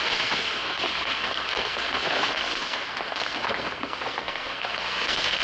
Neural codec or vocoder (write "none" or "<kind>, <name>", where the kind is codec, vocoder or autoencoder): codec, SNAC